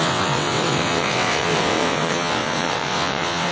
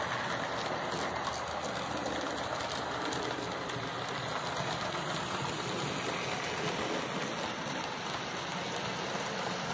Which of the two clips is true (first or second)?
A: second